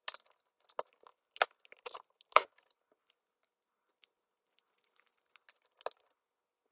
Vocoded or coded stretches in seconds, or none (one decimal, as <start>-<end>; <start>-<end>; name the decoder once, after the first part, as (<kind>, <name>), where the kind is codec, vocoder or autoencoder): none